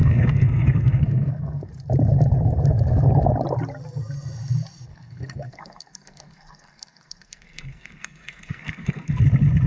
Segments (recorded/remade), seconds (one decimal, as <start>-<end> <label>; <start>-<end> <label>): 0.0-1.7 remade; 1.7-4.9 recorded; 4.9-9.2 remade; 9.2-9.7 recorded

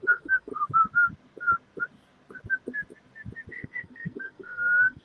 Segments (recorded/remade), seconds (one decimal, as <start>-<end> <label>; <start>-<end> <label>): 0.0-0.5 remade; 0.5-3.5 recorded; 3.5-5.0 remade

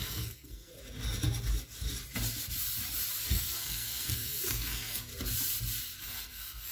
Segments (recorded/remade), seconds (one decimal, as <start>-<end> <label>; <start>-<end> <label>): 0.0-0.7 remade; 0.7-3.3 recorded; 3.3-5.1 remade; 5.1-6.0 recorded; 6.0-6.7 remade